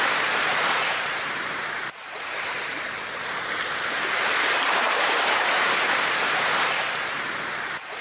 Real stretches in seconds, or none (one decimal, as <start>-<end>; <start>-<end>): 2.7-4.6; 6.5-7.6